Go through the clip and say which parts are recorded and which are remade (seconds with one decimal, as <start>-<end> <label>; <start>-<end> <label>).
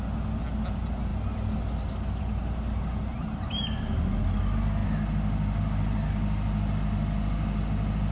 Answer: 0.0-8.1 recorded